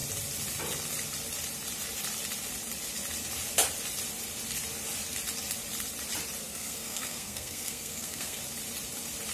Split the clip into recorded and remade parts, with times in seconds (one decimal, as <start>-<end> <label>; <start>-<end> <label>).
0.0-6.4 recorded; 6.4-8.4 remade; 8.4-9.3 recorded